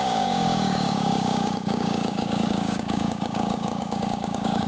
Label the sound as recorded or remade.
remade